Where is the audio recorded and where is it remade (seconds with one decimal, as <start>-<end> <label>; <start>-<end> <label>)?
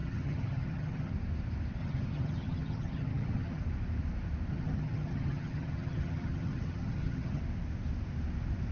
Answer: 0.0-1.1 remade; 1.1-1.8 recorded; 1.8-3.6 remade; 3.6-4.5 recorded; 4.5-7.4 remade; 7.4-8.7 recorded